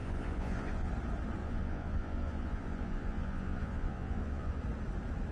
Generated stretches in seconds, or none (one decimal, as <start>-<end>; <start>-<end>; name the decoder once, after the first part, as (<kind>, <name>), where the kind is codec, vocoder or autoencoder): 0.0-0.9 (vocoder, Vocos); 1.4-4.6